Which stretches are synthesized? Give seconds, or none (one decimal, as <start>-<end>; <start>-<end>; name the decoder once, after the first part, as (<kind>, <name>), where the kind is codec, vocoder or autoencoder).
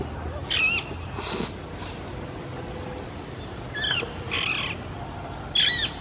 none